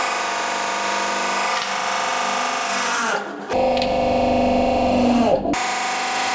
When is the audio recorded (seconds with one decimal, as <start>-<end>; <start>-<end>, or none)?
2.1-6.3